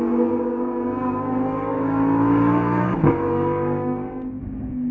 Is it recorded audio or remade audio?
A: remade